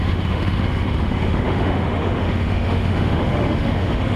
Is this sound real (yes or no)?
no